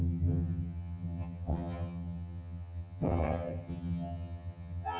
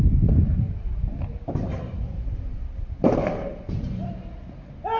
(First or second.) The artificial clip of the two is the first